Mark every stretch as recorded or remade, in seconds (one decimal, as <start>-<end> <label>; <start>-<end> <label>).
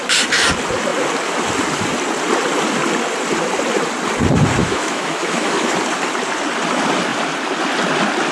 0.0-4.6 recorded; 4.6-5.7 remade; 5.7-8.3 recorded